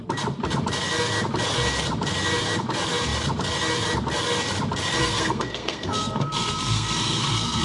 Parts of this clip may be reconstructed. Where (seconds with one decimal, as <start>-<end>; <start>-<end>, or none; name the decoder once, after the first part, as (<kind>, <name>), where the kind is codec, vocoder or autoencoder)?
5.0-7.6 (codec, SNAC)